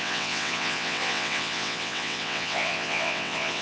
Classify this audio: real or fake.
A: fake